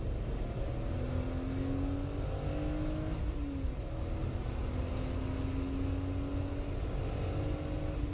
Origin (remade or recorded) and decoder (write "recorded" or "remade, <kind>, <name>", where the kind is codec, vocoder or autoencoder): recorded